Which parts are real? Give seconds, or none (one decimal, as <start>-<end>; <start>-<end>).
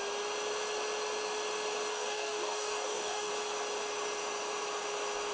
0.0-1.9; 3.3-5.3